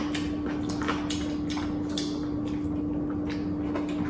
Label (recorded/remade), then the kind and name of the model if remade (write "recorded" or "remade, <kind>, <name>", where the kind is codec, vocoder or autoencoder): recorded